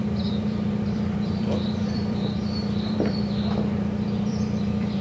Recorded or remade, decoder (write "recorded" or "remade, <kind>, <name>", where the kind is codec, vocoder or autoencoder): remade, vocoder, BigVGAN v2